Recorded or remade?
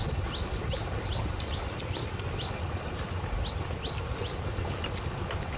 recorded